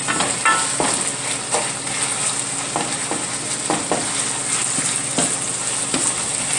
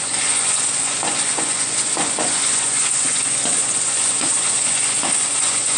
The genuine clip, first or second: first